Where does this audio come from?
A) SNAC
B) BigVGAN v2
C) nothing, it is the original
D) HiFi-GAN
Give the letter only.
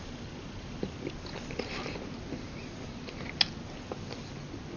C